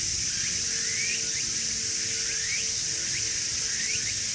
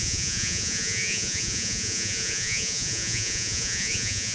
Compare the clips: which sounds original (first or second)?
first